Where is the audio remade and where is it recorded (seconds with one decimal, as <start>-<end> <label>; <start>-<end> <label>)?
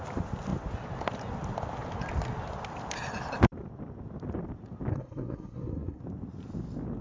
0.0-4.9 recorded; 4.9-6.0 remade; 6.0-7.0 recorded